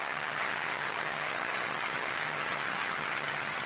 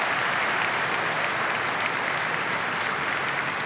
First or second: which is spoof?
first